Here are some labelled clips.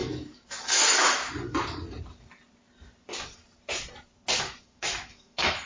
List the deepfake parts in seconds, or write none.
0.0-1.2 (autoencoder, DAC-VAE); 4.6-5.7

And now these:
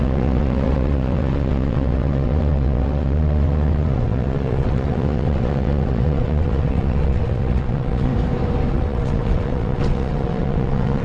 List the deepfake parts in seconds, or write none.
0.0-8.1 (vocoder, WaveNeXt); 8.7-11.0

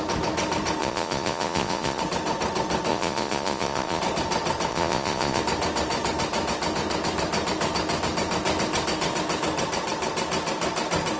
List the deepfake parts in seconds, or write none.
0.8-2.0 (vocoder, Vocos); 2.9-4.0; 4.7-5.4